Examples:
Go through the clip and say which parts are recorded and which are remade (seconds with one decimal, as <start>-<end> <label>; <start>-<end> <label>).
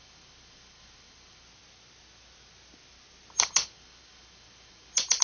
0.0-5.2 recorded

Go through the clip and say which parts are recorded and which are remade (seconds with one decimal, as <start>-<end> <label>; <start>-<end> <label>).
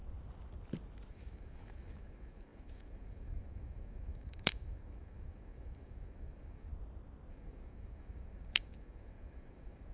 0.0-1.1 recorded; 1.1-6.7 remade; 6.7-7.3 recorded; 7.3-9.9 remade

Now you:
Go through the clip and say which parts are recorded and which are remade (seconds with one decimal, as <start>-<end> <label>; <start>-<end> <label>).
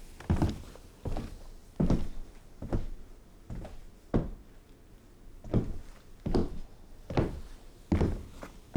0.0-8.8 recorded